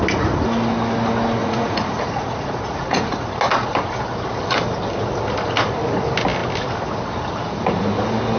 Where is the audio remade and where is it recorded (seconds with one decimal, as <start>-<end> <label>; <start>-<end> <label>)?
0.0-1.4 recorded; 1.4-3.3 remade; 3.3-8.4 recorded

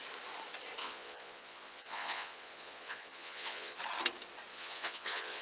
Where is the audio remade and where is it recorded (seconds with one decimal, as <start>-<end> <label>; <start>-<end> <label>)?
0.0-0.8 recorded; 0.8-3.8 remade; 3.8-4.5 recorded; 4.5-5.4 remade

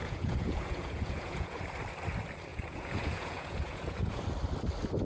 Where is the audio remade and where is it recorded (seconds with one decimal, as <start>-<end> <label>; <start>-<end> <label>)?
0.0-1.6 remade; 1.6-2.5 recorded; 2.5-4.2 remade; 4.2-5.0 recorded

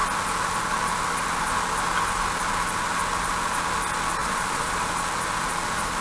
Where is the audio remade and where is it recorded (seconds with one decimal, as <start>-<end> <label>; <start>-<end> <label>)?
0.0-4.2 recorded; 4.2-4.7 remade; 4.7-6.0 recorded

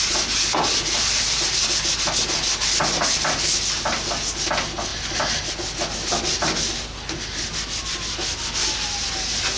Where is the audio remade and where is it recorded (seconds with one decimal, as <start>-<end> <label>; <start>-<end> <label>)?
0.0-9.6 recorded